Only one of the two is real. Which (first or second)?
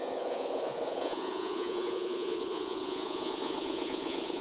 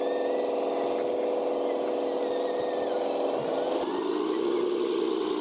second